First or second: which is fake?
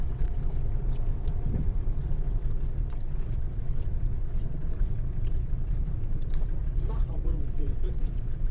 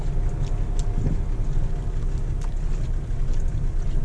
first